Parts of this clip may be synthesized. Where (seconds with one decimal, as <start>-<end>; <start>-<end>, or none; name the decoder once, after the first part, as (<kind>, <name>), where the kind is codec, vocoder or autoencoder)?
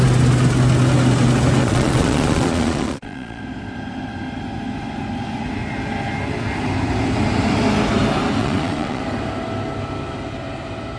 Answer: 1.6-3.4 (vocoder, Vocos); 8.4-9.0